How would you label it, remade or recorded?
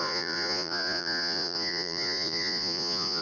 remade